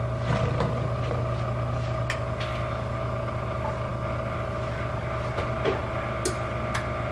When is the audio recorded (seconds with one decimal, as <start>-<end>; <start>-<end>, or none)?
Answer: 0.0-7.1